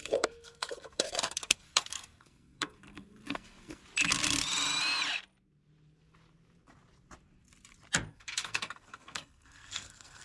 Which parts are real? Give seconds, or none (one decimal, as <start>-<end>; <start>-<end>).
3.8-8.1